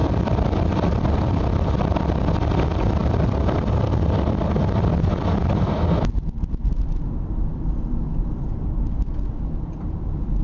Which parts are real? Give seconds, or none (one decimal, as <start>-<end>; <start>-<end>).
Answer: none